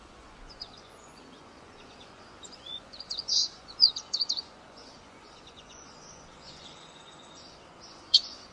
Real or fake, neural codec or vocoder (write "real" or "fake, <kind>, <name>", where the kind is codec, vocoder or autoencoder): fake, vocoder, Vocos